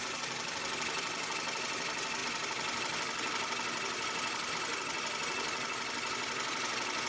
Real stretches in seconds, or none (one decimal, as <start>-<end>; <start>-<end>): 0.0-7.1